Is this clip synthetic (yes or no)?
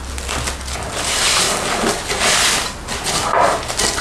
no